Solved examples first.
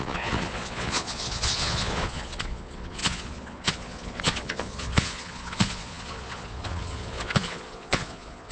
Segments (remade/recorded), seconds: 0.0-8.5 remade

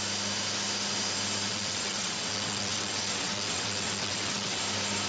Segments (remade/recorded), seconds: 0.0-1.5 recorded; 1.5-4.6 remade; 4.6-5.1 recorded

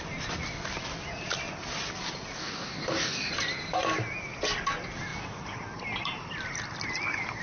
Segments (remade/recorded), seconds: 0.0-2.4 recorded; 2.4-3.3 remade; 3.3-7.4 recorded